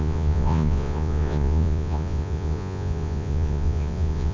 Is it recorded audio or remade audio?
remade